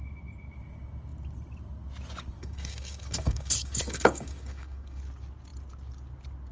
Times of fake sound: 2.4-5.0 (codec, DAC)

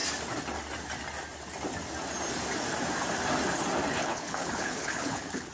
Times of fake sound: 4.0-5.5 (codec, HILCodec)

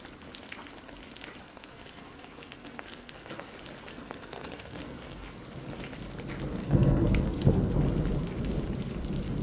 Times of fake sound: 1.4-3.5 (codec, SNAC); 3.9-5.3; 6.6-7.7